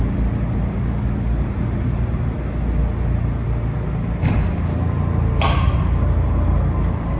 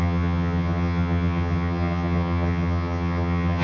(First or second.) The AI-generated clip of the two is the second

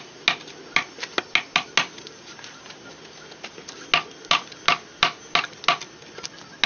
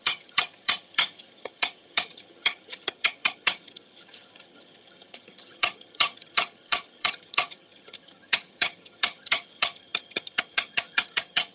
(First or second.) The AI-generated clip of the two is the second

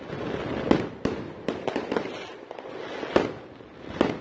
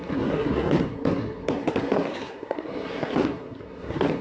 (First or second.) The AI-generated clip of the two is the second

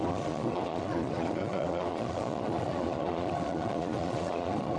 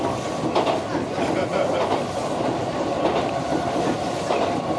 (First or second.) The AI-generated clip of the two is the first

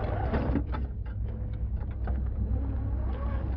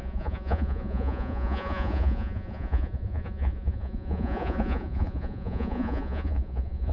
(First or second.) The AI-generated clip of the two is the second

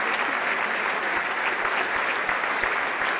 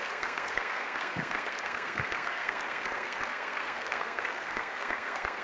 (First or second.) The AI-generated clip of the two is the second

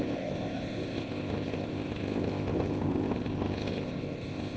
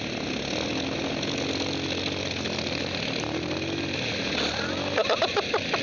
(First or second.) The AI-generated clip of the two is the first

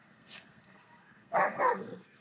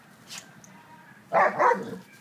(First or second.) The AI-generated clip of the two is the first